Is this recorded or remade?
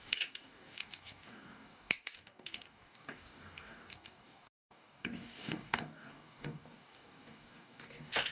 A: remade